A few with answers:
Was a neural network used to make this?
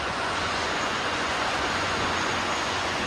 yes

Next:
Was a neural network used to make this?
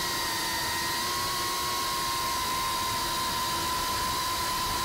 no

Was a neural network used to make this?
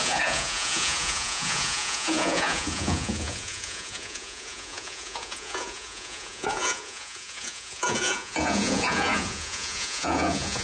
yes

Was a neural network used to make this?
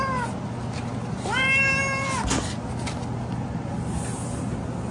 no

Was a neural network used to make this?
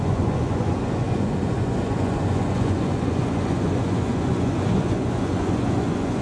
yes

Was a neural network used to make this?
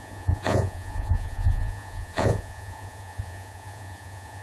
yes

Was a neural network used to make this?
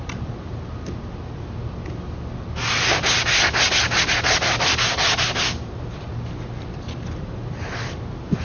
no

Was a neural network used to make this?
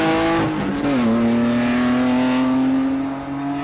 no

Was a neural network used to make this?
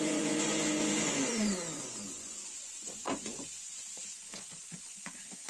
yes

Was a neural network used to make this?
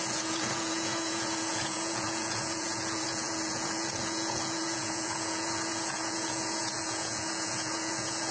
yes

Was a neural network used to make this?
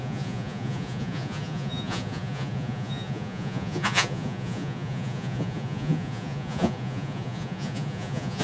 yes